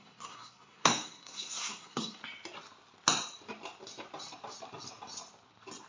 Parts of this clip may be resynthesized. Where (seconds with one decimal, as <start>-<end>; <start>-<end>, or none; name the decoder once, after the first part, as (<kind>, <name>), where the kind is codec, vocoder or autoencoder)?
0.0-2.2 (codec, SNAC)